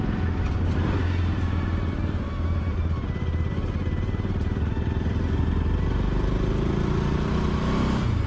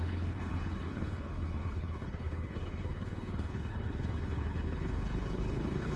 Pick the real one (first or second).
first